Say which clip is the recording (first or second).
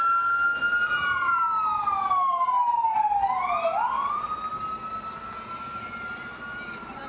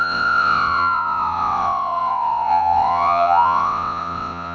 first